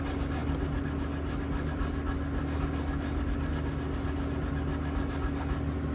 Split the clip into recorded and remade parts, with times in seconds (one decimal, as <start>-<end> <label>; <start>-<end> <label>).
0.0-5.9 recorded